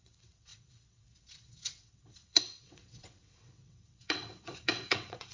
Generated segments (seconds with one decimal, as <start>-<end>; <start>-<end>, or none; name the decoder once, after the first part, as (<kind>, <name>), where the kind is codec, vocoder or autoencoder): 0.0-5.3 (vocoder, WaveNeXt)